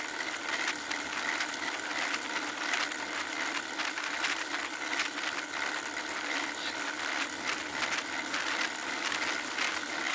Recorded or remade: recorded